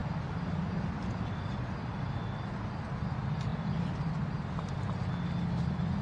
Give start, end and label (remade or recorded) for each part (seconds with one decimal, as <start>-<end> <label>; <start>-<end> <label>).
0.0-3.5 recorded; 3.5-4.1 remade; 4.1-6.0 recorded